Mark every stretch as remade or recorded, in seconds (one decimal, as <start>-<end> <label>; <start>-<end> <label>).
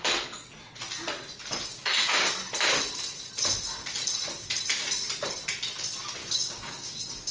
0.0-1.7 recorded; 1.7-2.3 remade; 2.3-6.2 recorded; 6.2-7.3 remade